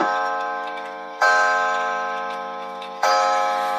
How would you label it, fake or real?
fake